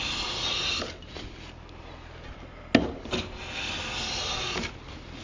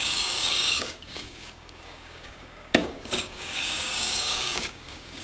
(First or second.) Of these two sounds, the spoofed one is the second